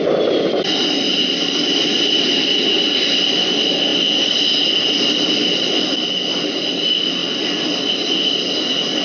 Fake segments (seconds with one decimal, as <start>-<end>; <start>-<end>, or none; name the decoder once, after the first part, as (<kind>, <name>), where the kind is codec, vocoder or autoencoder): none